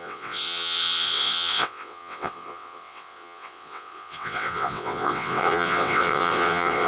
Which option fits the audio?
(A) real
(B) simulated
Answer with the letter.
B